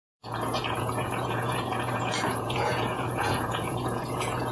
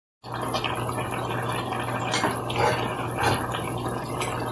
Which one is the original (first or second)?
second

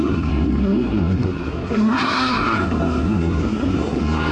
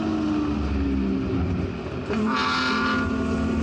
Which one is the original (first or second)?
second